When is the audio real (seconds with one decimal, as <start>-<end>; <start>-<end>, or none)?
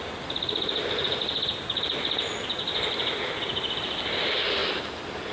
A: 0.0-5.3